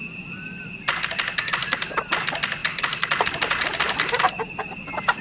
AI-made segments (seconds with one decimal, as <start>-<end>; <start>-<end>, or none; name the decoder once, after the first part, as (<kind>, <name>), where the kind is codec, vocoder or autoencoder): none